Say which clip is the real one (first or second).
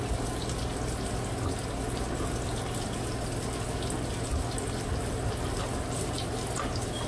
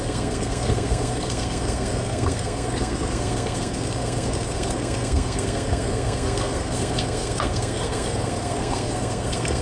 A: first